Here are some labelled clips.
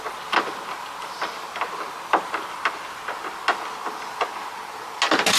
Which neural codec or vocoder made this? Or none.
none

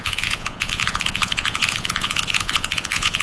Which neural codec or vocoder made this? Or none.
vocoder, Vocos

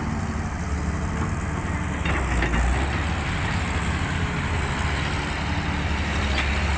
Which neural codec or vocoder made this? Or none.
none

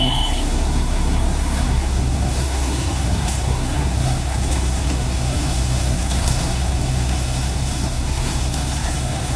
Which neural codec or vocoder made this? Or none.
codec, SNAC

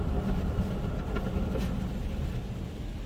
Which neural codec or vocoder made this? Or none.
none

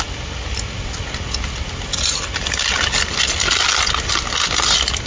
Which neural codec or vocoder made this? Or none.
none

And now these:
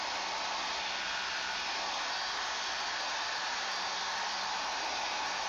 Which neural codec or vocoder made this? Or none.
none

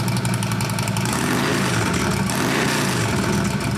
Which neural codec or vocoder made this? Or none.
none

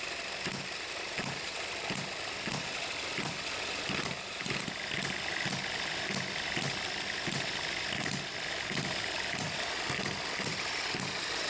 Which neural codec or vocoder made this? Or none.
none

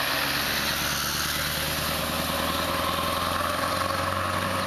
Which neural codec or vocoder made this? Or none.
none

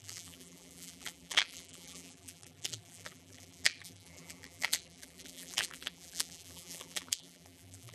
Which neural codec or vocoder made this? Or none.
vocoder, BigVGAN v2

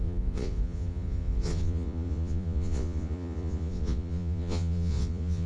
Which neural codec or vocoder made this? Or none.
vocoder, Vocos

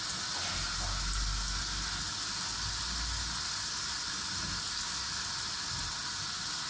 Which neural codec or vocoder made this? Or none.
none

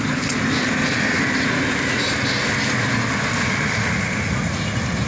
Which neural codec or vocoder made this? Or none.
none